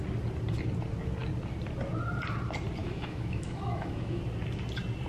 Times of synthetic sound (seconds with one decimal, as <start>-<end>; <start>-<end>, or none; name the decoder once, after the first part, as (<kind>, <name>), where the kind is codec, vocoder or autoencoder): 2.8-4.2 (autoencoder, DAC-VAE)